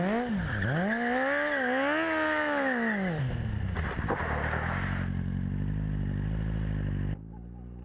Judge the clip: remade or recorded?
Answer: recorded